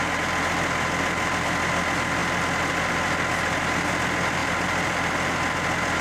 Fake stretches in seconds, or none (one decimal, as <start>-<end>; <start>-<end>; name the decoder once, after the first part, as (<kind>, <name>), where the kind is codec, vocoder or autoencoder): 4.4-5.3 (vocoder, BigVGAN v2)